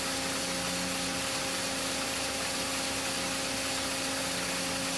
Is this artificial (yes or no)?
no